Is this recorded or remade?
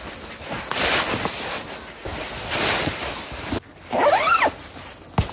recorded